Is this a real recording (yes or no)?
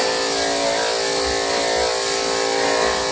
yes